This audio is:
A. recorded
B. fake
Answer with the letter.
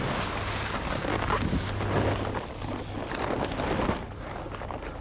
A